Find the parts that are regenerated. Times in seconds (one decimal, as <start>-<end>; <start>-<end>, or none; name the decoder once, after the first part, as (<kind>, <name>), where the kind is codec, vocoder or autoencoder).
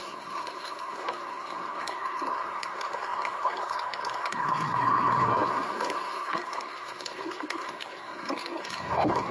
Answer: 0.0-9.3 (codec, SNAC)